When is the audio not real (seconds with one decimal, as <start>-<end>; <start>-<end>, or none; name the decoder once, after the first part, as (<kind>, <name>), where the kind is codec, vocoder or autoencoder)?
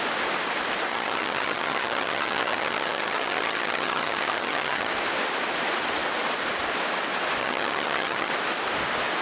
0.9-4.9 (vocoder, HiFi-GAN); 7.4-8.3